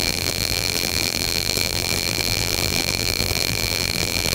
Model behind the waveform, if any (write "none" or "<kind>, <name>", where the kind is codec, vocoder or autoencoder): vocoder, BigVGAN v2